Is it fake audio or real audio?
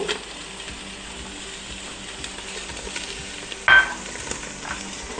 real